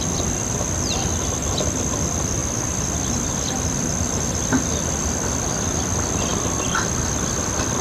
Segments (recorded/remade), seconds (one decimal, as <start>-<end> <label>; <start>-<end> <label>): 0.0-7.8 recorded